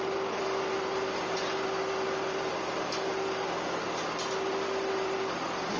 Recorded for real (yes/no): yes